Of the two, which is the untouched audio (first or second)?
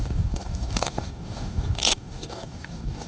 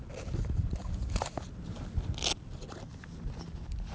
second